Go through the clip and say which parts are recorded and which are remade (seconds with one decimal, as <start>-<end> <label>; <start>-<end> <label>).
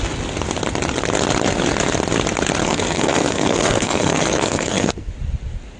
0.0-2.6 recorded; 2.6-5.1 remade; 5.1-5.8 recorded